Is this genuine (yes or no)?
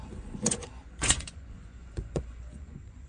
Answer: no